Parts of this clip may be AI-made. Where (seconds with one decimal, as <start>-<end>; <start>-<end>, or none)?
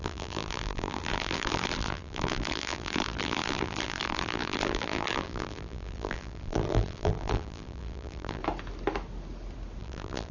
0.0-8.4; 9.8-10.3